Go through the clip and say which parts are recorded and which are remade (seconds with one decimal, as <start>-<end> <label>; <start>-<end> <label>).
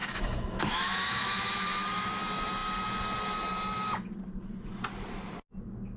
0.0-2.2 remade; 2.2-6.0 recorded